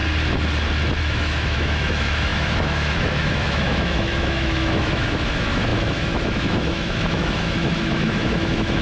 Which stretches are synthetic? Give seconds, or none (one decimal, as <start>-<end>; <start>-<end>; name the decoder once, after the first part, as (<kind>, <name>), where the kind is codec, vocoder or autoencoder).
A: 1.0-8.8 (autoencoder, DAC-VAE)